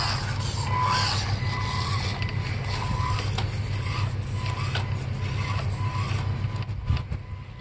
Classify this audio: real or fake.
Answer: real